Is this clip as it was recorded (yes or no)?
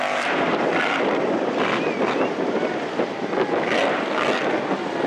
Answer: yes